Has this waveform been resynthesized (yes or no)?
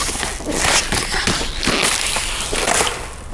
no